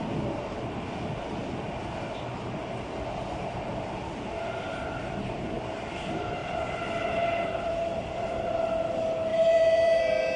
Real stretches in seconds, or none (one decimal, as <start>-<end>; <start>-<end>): 0.0-6.4; 8.5-9.3; 10.0-10.4